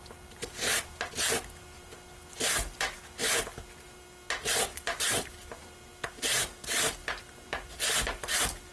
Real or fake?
real